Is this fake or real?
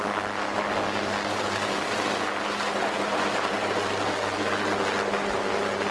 real